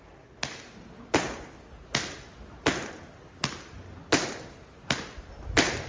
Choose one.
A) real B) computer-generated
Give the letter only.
A